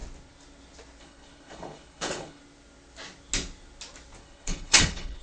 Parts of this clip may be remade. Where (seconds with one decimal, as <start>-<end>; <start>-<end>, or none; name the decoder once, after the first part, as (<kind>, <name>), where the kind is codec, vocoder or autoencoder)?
1.0-2.4 (codec, HILCodec); 4.2-5.2